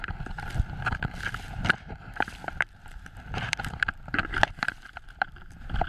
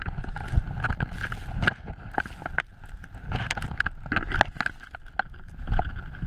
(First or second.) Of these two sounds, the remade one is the first